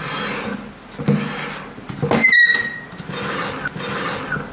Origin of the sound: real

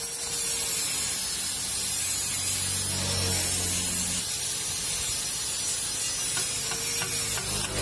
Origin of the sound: real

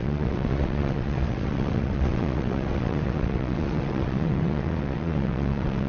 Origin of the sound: fake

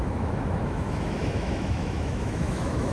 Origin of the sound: fake